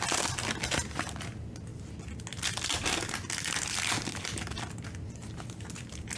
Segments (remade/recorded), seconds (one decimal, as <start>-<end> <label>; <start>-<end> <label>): 0.0-6.2 recorded